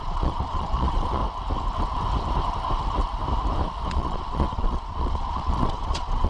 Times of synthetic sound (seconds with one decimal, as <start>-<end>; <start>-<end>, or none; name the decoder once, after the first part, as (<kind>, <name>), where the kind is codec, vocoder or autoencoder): 0.0-1.2 (vocoder, Vocos); 3.9-6.3